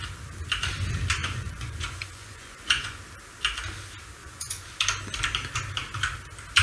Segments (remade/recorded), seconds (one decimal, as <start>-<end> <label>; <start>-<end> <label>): 0.0-1.2 recorded; 1.2-3.0 remade; 3.0-4.2 recorded; 4.2-4.7 remade; 4.7-6.6 recorded